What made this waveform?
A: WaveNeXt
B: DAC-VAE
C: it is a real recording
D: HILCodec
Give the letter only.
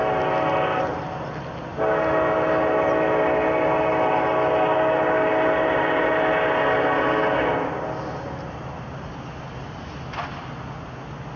C